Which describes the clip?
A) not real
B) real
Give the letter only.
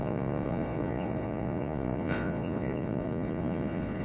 A